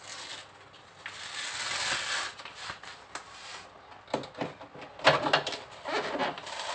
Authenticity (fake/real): real